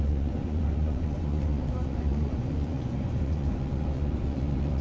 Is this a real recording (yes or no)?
no